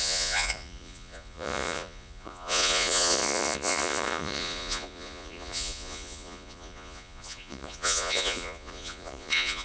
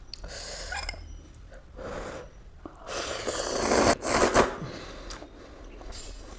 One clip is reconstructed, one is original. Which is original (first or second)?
second